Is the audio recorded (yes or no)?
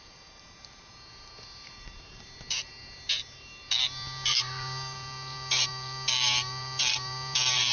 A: no